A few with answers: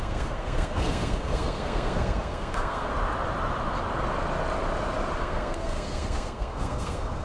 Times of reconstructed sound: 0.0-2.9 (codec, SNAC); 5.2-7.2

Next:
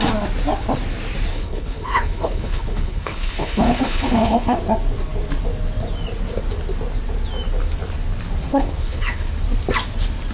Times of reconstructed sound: 1.3-4.6 (codec, HILCodec); 8.5-9.3

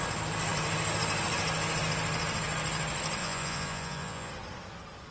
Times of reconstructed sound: 3.2-4.3 (vocoder, Vocos)

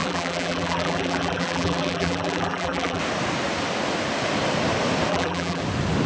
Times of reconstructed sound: 0.0-3.0 (vocoder, BigVGAN v2); 5.1-5.6

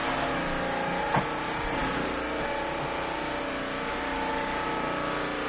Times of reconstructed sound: none